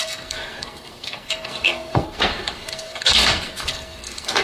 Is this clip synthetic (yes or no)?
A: yes